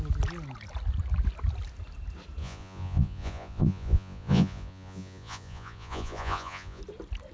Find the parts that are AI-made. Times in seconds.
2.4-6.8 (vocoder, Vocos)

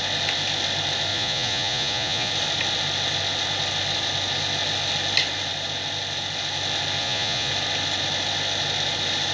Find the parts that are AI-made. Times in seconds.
1.1-2.3 (vocoder, Vocos); 7.0-7.5

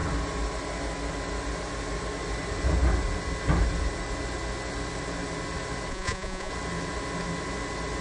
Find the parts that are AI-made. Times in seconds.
5.9-6.5 (vocoder, Vocos)

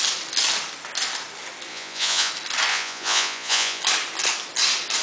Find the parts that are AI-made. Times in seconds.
1.7-2.3 (vocoder, Vocos); 2.7-3.8